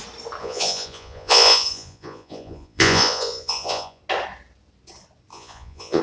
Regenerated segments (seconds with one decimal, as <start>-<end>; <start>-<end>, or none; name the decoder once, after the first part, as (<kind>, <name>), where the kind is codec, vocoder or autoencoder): 0.4-4.0 (vocoder, Vocos); 5.3-6.0

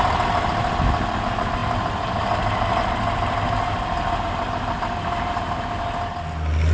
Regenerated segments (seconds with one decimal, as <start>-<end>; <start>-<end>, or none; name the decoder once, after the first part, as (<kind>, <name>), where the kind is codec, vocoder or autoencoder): none